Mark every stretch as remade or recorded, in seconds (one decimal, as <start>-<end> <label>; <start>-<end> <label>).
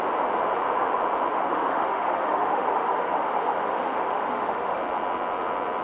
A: 0.0-1.3 recorded; 1.3-4.8 remade; 4.8-5.8 recorded